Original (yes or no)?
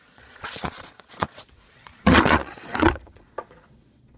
no